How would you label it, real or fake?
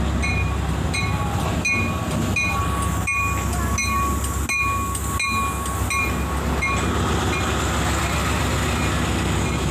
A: real